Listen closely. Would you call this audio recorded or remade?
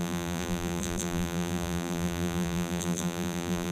remade